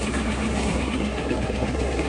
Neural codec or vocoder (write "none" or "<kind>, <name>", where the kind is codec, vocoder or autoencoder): codec, SNAC